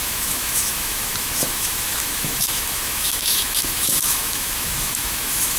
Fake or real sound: fake